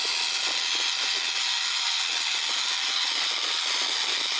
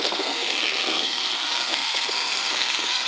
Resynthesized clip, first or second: second